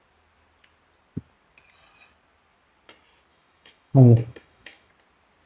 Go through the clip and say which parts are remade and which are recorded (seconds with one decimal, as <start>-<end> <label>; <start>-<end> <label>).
0.0-3.3 recorded; 3.3-4.9 remade; 4.9-5.5 recorded